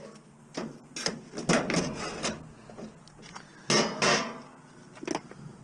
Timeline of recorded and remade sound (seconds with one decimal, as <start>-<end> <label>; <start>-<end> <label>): 0.0-5.6 recorded